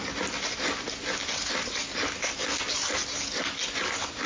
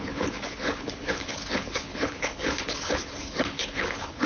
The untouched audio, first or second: first